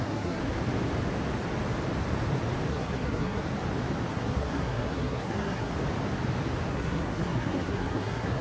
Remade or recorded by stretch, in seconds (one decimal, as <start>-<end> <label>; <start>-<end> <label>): 0.0-0.4 remade; 0.4-2.7 recorded; 2.7-3.4 remade; 3.4-4.1 recorded; 4.1-5.7 remade; 5.7-6.7 recorded; 6.7-8.4 remade